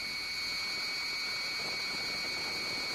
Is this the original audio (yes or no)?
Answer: yes